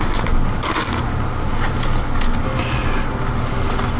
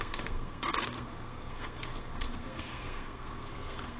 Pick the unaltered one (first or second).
first